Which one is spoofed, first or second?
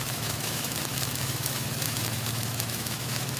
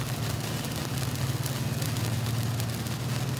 first